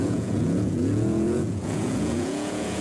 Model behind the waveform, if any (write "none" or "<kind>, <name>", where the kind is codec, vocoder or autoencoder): vocoder, Vocos